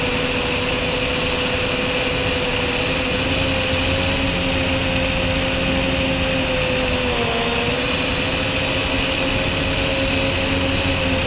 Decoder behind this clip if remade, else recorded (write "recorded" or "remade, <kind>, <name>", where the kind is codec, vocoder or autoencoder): recorded